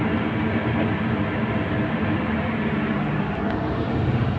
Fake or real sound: real